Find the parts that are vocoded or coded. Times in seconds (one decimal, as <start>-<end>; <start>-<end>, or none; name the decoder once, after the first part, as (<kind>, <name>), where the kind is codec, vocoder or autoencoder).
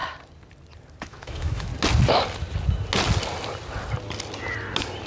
1.0-1.7 (autoencoder, DAC-VAE)